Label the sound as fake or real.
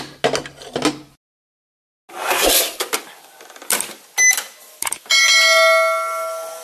real